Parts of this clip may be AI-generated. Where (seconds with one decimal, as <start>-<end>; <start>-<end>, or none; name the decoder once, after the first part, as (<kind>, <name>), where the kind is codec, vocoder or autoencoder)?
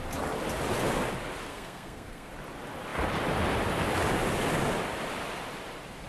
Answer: 1.5-2.3 (codec, SNAC)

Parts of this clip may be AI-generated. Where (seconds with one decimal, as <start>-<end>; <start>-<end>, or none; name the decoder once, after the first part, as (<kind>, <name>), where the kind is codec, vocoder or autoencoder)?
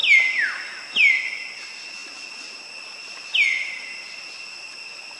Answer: none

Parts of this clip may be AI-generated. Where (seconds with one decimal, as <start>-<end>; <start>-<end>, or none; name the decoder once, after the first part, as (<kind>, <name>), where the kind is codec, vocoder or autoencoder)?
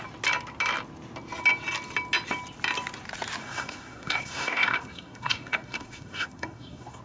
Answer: 3.4-7.0 (codec, SNAC)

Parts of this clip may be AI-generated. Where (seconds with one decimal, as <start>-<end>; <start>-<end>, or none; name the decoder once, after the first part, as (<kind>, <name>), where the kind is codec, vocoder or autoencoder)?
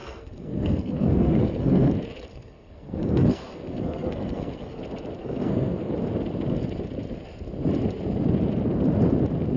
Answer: 0.0-1.9 (codec, SNAC); 2.3-4.8; 5.2-5.9